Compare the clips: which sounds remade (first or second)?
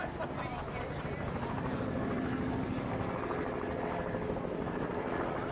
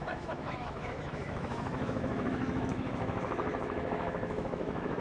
second